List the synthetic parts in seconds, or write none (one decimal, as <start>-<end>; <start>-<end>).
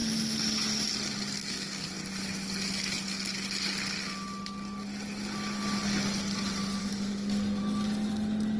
1.4-1.9; 6.8-7.6